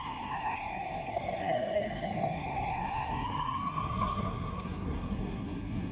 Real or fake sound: fake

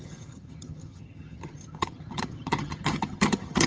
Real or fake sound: fake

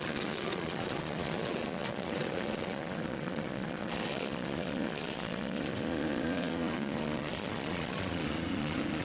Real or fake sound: fake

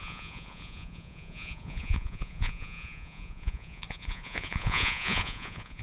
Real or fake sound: fake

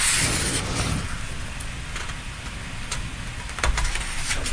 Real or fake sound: real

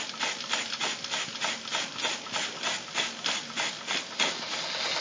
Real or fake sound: real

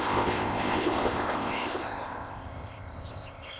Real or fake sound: fake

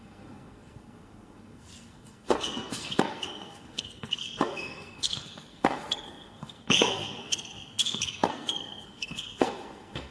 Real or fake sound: fake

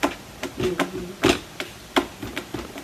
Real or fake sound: real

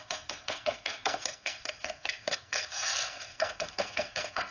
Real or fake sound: fake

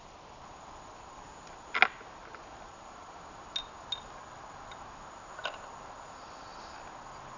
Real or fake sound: real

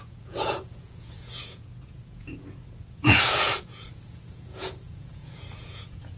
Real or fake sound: fake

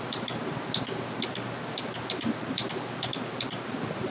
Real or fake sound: real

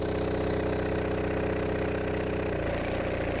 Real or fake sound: real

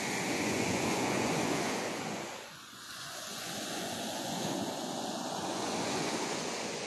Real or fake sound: fake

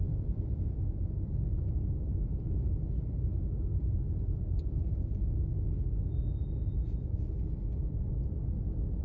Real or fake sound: real